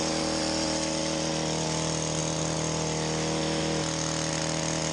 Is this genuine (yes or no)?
yes